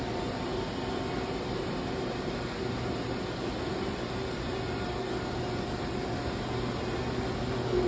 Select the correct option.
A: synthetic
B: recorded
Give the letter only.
B